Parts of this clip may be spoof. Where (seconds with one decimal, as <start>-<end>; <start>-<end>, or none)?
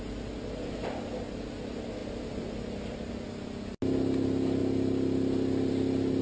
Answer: none